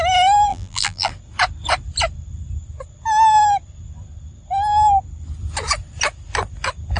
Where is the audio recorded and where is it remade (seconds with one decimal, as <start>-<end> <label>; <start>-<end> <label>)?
0.0-0.5 recorded; 0.5-1.1 remade; 1.1-7.0 recorded